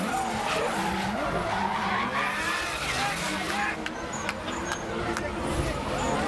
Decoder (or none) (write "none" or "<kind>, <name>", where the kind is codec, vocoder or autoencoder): none